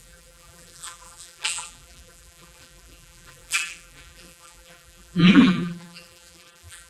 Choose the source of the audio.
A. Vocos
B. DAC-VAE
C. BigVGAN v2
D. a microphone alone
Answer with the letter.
C